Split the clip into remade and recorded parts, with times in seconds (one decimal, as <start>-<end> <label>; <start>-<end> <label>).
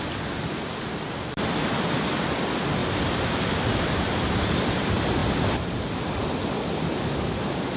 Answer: 0.0-2.8 remade; 2.8-4.5 recorded; 4.5-7.8 remade